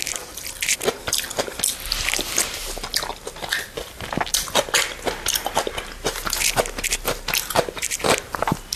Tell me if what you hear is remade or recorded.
recorded